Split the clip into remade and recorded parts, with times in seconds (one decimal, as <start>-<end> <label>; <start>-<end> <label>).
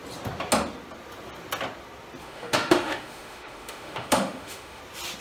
0.0-2.2 recorded; 2.2-4.8 remade; 4.8-5.2 recorded